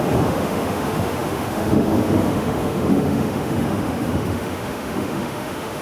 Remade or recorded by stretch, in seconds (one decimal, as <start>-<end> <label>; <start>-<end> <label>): 0.0-5.8 remade